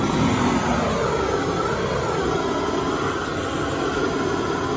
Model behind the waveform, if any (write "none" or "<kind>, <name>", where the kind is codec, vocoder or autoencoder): none